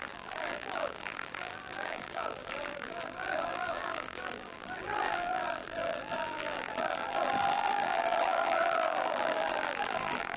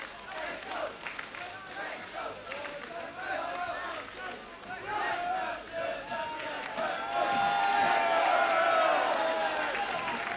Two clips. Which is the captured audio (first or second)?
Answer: second